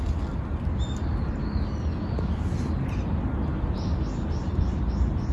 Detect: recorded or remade recorded